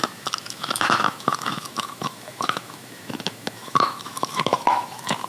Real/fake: fake